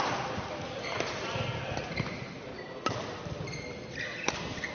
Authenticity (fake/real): real